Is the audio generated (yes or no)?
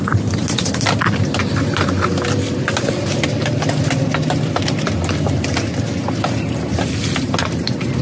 no